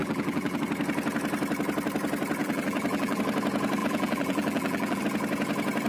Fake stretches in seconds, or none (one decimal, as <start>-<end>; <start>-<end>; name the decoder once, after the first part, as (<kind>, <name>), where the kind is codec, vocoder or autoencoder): 0.0-0.6 (vocoder, BigVGAN v2); 2.4-3.2; 3.8-5.0